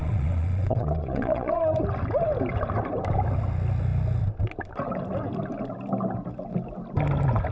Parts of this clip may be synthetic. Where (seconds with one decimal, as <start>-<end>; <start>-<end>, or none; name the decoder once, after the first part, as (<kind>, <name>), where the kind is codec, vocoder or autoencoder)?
0.0-1.6 (vocoder, Vocos)